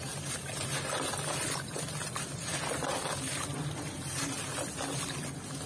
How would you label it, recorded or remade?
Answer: recorded